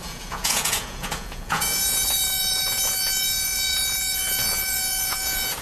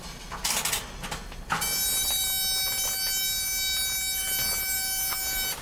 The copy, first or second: first